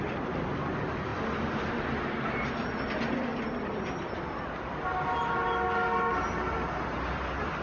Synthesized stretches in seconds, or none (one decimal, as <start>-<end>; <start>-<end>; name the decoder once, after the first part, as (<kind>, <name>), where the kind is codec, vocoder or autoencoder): none